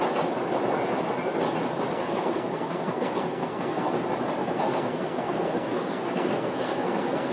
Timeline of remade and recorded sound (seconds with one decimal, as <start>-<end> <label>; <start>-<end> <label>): 0.0-1.9 recorded; 1.9-3.9 remade; 3.9-4.4 recorded; 4.4-7.3 remade